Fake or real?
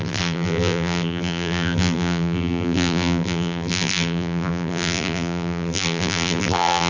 fake